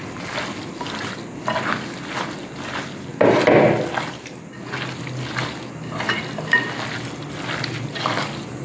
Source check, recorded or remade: recorded